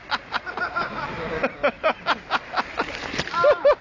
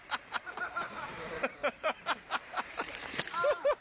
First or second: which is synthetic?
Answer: second